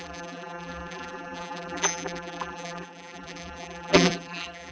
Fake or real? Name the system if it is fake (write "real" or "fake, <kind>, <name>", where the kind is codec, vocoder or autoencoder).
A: fake, vocoder, BigVGAN v2